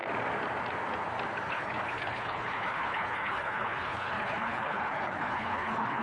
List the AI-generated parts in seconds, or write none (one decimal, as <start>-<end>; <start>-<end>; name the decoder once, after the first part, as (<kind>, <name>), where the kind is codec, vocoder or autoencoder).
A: 1.5-6.0 (codec, HILCodec)